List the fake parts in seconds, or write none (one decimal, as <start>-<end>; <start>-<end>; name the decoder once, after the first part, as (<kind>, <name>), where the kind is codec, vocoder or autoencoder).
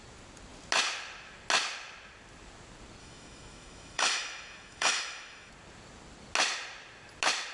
3.0-5.5 (autoencoder, DAC-VAE)